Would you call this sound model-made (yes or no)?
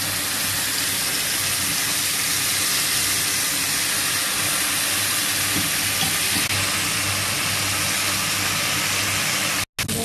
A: no